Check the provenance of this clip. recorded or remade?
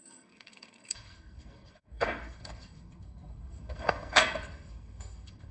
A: remade